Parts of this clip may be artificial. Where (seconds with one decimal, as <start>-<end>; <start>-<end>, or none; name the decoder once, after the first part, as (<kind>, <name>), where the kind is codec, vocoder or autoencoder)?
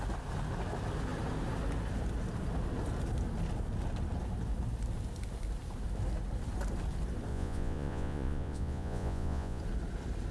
7.3-9.6 (vocoder, Vocos)